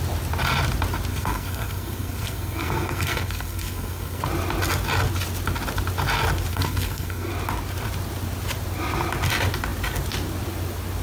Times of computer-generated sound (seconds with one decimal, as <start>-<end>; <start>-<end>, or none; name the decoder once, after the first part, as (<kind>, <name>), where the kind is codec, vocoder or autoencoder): 1.1-4.2 (codec, SNAC); 6.5-7.3